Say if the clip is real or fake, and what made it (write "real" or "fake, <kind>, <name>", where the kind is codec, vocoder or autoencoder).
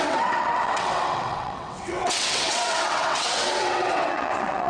fake, vocoder, WaveNeXt